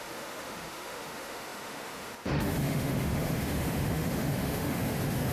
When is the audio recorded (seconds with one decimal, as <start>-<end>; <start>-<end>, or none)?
none

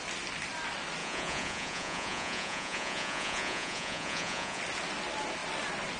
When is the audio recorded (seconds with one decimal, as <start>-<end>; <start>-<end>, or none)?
0.0-1.0; 4.6-6.0